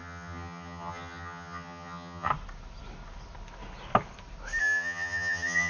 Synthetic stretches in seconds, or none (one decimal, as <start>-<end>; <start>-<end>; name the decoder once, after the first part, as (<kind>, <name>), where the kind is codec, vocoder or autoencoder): 0.0-2.3 (vocoder, HiFi-GAN); 4.6-5.7